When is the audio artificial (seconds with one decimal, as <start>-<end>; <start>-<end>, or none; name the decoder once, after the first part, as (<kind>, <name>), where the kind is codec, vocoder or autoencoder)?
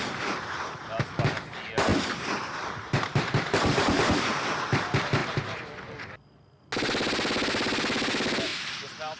1.9-4.2 (vocoder, BigVGAN v2); 8.5-9.2